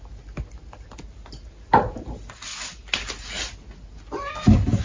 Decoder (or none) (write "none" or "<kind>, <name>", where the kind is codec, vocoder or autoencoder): none